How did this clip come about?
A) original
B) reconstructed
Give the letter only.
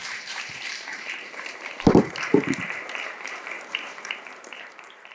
B